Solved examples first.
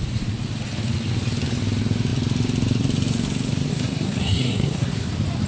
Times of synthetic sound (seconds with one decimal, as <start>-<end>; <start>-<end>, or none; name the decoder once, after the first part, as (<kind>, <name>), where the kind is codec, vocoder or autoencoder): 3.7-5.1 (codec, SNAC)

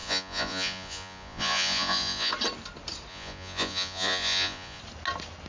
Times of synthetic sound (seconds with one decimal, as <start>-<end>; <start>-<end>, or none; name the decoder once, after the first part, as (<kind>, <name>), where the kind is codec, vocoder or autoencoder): 0.0-2.3 (vocoder, Vocos); 3.1-4.8

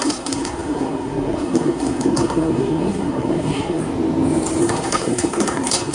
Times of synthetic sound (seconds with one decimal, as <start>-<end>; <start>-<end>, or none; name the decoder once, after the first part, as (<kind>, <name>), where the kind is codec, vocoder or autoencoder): 0.0-3.8 (codec, SNAC); 4.6-5.9

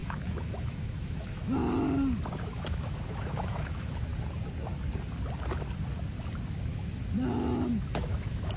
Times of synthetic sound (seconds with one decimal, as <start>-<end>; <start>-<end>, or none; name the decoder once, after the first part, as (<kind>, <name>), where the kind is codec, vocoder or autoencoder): 0.0-1.6 (autoencoder, DAC-VAE); 2.4-4.1; 7.8-8.6

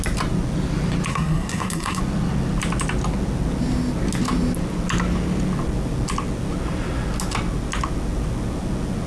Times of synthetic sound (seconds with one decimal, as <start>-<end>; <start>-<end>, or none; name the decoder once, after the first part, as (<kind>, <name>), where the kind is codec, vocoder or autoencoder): 1.1-2.0 (codec, SNAC)